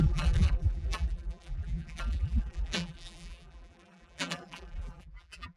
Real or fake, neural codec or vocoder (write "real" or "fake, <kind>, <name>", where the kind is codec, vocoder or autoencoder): fake, vocoder, BigVGAN v2